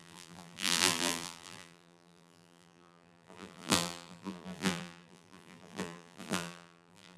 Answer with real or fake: fake